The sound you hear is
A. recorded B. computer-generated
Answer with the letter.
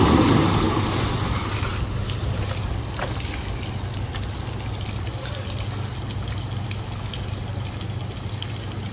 A